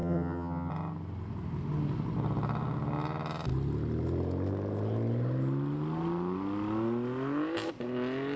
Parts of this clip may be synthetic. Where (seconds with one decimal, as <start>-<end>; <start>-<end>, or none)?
0.0-0.7